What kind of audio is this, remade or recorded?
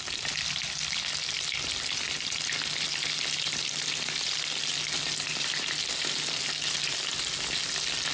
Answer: recorded